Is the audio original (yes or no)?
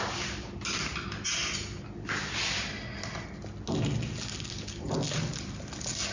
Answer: yes